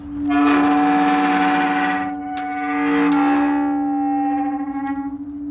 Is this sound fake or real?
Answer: real